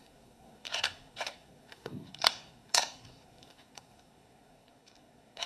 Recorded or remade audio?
remade